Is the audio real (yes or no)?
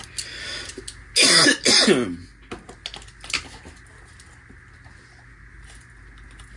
yes